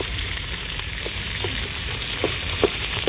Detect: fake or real fake